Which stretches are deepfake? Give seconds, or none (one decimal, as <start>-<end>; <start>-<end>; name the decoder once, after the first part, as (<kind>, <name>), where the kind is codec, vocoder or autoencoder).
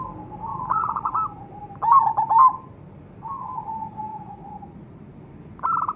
0.5-1.1 (vocoder, Vocos); 4.1-5.0